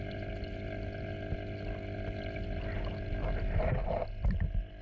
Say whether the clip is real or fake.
real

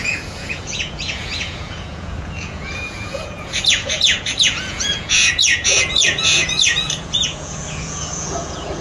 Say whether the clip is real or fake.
fake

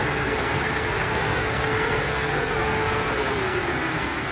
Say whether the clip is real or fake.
fake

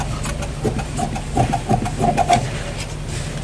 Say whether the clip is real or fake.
real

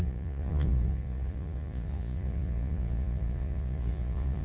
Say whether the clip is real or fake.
fake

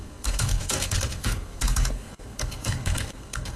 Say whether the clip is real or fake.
fake